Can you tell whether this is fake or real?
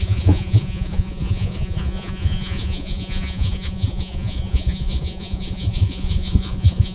fake